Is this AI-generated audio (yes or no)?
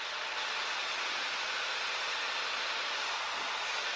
no